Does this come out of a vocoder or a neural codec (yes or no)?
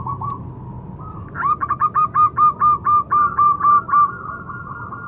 no